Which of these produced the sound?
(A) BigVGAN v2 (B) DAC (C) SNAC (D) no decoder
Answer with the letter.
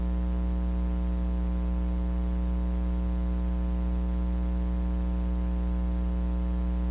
D